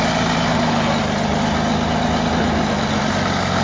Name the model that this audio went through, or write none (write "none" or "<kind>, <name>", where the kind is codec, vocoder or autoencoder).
none